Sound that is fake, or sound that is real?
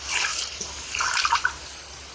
real